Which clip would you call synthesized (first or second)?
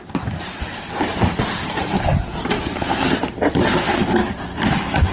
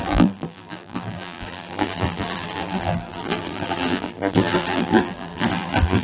second